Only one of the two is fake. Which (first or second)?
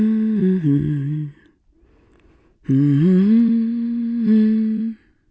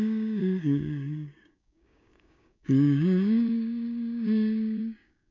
second